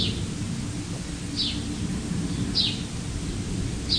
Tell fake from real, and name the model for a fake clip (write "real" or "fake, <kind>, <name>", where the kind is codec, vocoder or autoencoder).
real